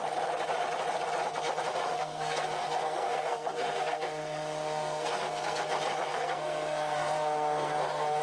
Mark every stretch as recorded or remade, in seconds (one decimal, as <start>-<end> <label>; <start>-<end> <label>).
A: 0.0-1.8 recorded; 1.8-5.6 remade; 5.6-6.1 recorded; 6.1-8.2 remade